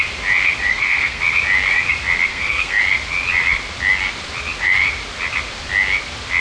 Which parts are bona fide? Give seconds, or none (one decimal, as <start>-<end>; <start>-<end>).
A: 0.0-0.7; 1.2-2.3; 2.8-6.4